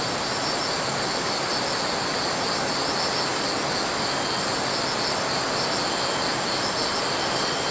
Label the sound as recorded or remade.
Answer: recorded